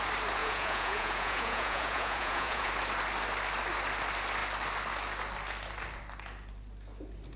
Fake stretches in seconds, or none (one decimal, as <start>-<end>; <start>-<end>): 0.4-2.7

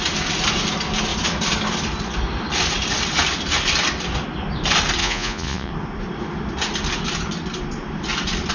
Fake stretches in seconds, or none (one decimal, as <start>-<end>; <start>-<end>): 5.0-5.7

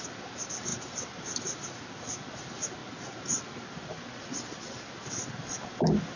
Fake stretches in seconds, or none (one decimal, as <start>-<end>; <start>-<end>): none